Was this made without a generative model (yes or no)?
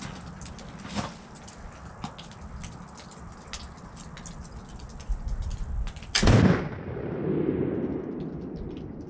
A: yes